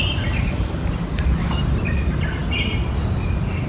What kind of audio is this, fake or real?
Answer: real